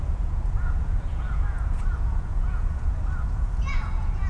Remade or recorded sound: remade